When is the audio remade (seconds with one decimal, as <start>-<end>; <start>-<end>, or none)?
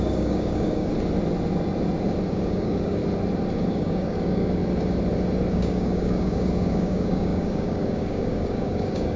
0.0-0.9; 2.3-3.0; 3.7-4.6; 5.5-9.2